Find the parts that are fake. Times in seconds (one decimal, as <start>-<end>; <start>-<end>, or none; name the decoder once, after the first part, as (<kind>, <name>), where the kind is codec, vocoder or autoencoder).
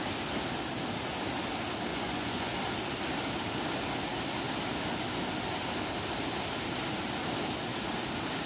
1.9-2.5 (vocoder, Vocos)